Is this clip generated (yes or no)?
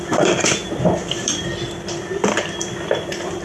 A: yes